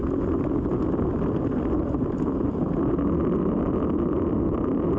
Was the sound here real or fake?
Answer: real